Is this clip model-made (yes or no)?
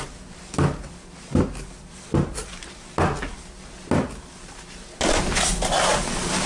no